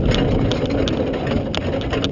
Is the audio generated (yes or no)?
no